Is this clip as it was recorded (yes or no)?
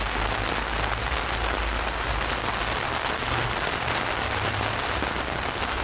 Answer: yes